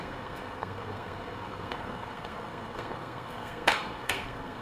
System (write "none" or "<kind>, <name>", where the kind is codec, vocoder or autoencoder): codec, SNAC